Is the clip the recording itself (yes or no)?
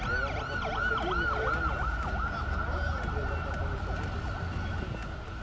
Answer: yes